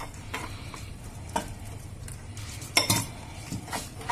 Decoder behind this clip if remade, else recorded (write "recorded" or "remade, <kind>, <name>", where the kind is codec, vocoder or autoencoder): remade, vocoder, BigVGAN v2